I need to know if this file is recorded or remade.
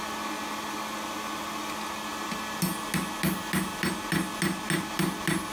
recorded